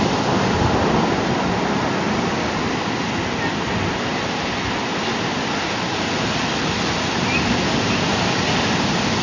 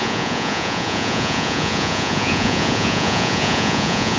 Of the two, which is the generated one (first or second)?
second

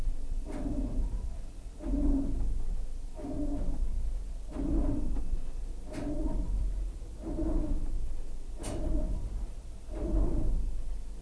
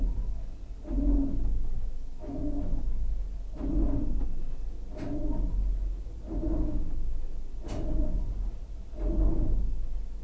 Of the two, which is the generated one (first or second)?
first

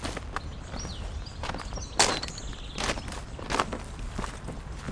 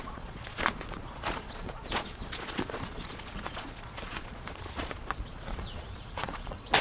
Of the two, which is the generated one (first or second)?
second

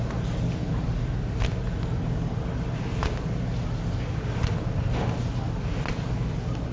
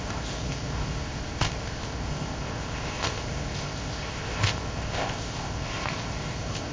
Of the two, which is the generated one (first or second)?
second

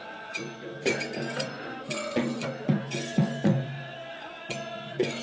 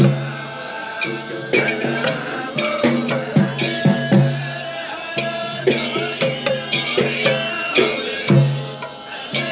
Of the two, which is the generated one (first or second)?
first